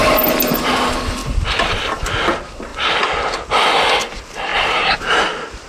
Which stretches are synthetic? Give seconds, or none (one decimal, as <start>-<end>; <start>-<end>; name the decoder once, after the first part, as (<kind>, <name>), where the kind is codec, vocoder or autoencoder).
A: 1.2-1.8 (vocoder, BigVGAN v2); 4.5-5.2